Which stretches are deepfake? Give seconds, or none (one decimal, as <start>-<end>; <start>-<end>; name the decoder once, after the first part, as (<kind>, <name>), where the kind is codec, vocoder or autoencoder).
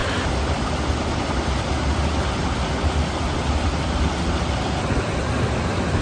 none